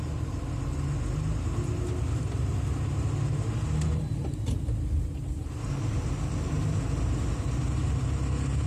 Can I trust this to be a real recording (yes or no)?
yes